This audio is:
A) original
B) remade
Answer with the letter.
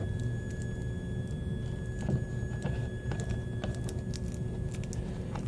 A